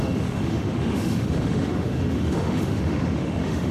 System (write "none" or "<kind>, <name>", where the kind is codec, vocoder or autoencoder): autoencoder, DAC-VAE